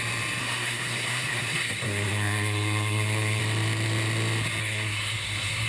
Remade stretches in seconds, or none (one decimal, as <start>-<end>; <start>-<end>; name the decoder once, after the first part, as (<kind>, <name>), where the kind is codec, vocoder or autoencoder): 0.4-3.4 (codec, SNAC); 4.6-5.7